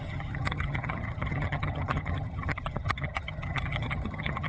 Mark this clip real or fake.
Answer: fake